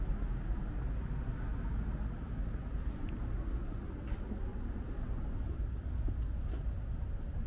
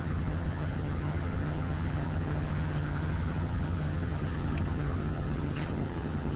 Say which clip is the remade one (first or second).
second